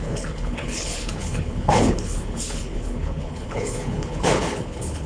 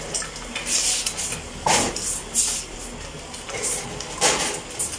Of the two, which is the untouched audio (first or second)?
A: second